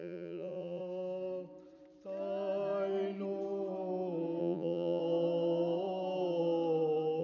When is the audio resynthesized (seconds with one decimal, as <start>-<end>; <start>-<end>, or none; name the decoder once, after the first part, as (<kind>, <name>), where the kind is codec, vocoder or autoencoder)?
0.0-0.8 (vocoder, Vocos); 4.4-5.0